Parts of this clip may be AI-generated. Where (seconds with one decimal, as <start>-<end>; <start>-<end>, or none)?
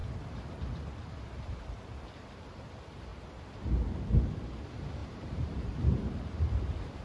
1.2-7.0